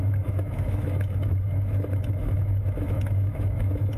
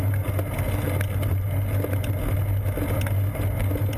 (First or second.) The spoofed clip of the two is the first